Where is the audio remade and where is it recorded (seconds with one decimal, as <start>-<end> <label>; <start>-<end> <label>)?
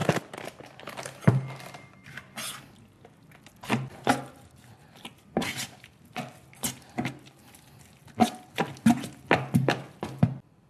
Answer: 0.0-10.7 recorded